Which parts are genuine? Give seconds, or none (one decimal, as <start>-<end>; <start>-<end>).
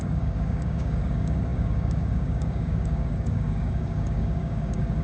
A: none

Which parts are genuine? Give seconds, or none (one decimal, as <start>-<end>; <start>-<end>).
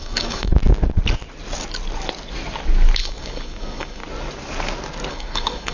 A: 0.5-3.0; 4.0-5.1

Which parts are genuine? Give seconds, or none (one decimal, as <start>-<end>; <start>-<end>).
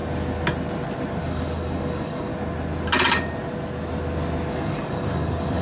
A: 0.0-1.2; 2.3-4.5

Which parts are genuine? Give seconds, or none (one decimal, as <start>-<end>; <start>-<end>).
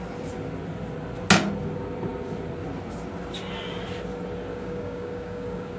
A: 0.0-4.5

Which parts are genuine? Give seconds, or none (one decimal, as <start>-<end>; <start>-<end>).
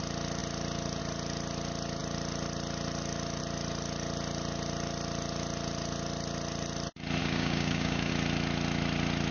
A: 0.0-7.2; 8.1-9.3